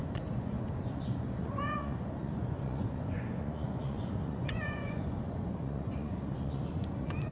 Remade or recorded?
remade